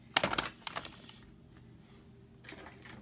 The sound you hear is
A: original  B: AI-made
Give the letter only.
A